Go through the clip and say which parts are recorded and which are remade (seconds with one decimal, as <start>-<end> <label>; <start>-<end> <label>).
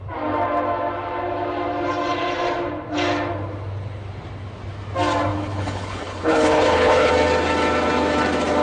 0.0-5.3 recorded; 5.3-7.1 remade; 7.1-8.6 recorded